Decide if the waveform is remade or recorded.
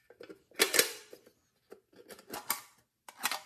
recorded